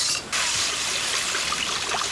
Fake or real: real